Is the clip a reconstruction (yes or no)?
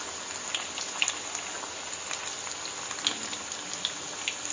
no